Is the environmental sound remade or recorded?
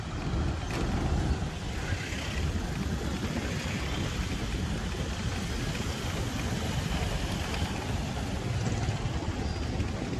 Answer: recorded